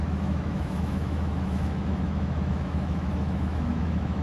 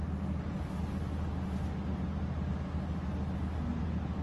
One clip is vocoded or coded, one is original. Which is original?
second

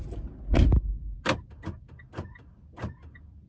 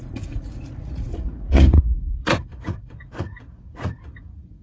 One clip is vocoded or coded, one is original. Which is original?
first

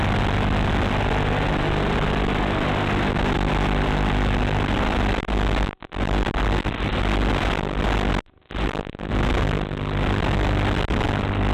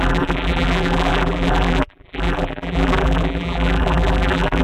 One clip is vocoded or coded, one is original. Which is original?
first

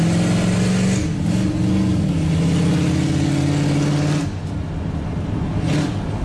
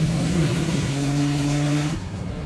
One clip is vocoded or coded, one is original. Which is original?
first